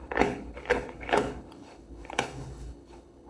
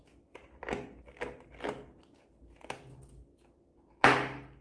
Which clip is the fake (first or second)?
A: first